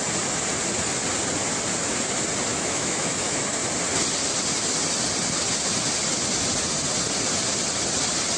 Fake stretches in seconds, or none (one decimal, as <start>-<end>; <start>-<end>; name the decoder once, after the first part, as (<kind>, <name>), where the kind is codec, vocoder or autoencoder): 2.5-3.4 (autoencoder, DAC-VAE)